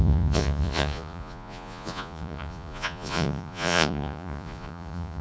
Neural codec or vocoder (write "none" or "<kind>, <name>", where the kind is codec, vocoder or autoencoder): vocoder, Vocos